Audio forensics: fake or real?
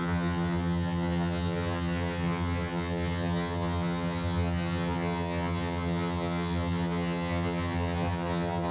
fake